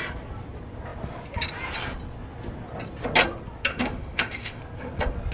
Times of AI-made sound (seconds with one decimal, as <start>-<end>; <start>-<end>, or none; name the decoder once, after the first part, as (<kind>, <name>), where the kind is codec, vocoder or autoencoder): 3.7-4.6 (autoencoder, DAC-VAE)